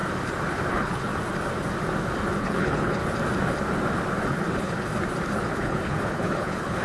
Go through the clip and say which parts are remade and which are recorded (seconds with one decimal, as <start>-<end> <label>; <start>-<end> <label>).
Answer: 0.0-0.7 recorded; 0.7-1.1 remade; 1.1-2.4 recorded; 2.4-3.0 remade; 3.0-4.3 recorded; 4.3-4.9 remade; 4.9-5.5 recorded; 5.5-6.8 remade